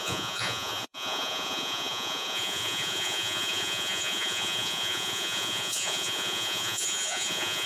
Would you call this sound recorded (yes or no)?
no